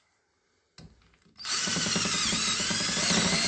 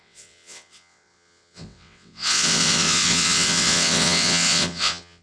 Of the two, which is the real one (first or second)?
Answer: first